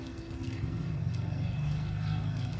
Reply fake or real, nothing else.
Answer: fake